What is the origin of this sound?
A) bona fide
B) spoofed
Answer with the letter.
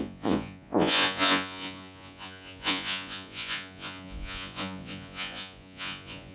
B